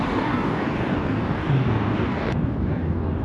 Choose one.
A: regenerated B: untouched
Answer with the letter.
A